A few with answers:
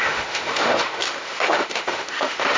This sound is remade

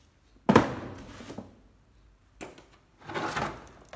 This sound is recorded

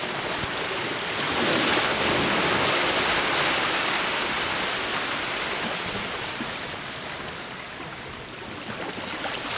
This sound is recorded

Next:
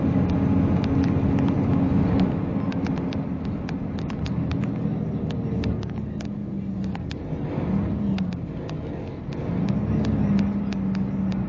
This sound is recorded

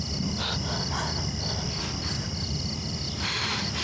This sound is recorded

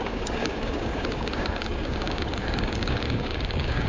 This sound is remade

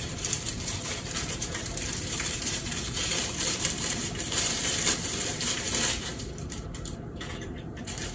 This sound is remade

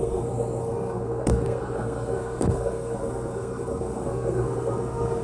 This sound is remade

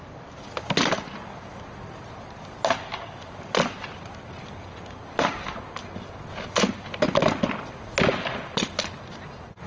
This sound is recorded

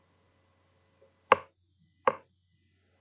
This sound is recorded